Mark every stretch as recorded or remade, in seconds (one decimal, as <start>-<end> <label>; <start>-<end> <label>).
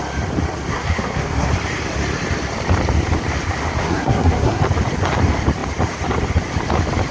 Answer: 0.0-0.7 recorded; 0.7-1.5 remade; 1.5-3.8 recorded; 3.8-4.6 remade; 4.6-7.1 recorded